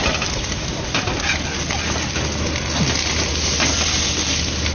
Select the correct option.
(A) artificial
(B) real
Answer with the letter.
B